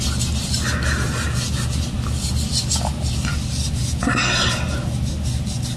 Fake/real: real